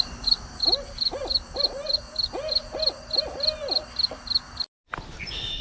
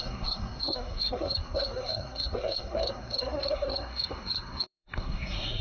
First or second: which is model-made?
second